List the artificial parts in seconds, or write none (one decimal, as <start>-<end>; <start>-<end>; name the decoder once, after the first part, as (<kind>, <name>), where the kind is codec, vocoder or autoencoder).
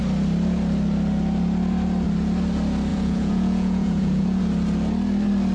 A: 2.9-4.4 (vocoder, Vocos)